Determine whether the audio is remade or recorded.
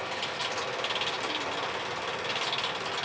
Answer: recorded